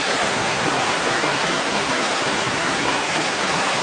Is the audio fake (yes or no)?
yes